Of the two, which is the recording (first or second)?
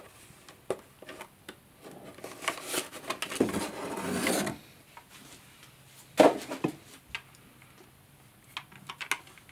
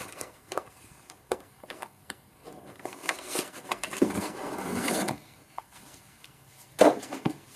first